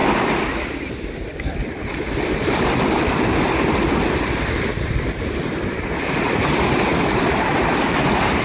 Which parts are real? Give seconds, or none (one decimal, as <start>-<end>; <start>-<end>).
0.0-5.0